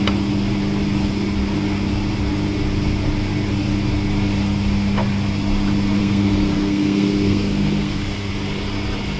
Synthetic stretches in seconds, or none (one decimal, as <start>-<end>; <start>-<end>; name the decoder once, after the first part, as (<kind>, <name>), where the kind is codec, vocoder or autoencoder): 6.0-8.3 (codec, SNAC)